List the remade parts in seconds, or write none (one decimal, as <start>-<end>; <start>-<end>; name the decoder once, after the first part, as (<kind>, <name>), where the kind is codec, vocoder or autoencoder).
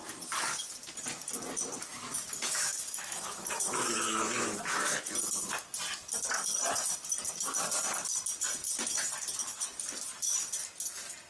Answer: 1.9-5.0 (autoencoder, DAC-VAE)